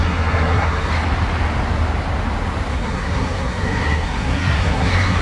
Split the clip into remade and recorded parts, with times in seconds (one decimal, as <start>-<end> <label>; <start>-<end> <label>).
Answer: 0.0-0.9 remade; 0.9-2.7 recorded; 2.7-5.2 remade